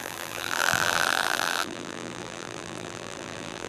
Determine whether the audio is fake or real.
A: fake